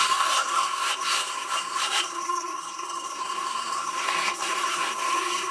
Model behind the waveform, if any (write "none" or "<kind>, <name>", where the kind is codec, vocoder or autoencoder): codec, SNAC